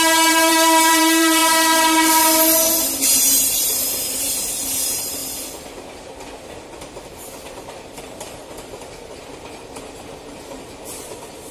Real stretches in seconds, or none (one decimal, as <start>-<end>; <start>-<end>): 1.4-3.0; 5.2-7.8